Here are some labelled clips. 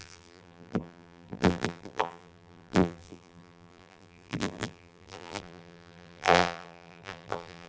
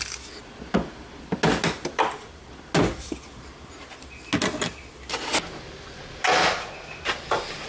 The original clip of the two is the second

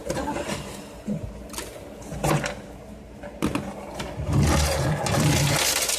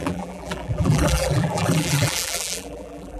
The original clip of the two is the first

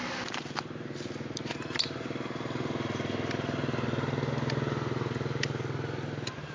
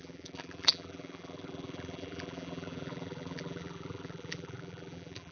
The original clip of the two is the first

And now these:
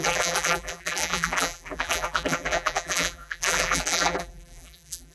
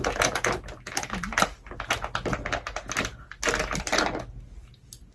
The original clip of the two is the second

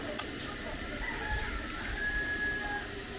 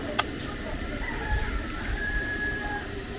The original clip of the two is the first